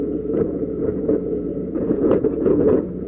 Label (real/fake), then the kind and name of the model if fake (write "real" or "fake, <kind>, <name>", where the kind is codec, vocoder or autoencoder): fake, vocoder, Vocos